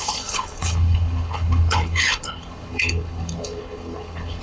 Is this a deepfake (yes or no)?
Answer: yes